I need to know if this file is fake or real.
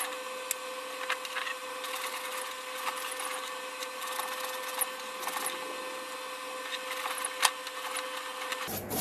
real